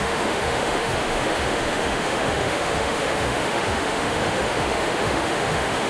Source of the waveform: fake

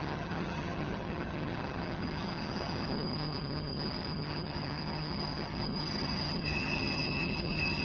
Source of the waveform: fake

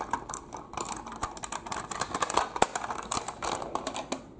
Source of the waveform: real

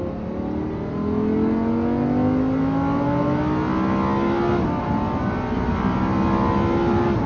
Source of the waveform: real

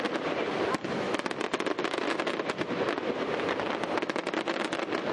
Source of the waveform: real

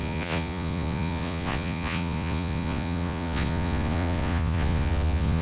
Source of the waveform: fake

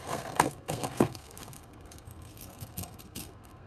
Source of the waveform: fake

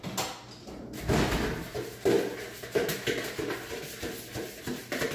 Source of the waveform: real